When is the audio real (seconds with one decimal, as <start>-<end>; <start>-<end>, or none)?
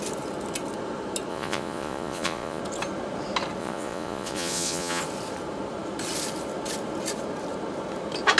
0.0-1.3; 2.6-3.6; 5.0-8.4